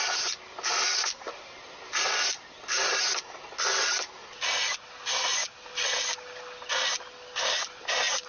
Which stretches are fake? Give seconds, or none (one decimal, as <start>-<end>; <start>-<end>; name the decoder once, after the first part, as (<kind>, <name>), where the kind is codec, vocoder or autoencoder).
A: none